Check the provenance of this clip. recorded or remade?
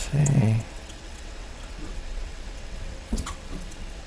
remade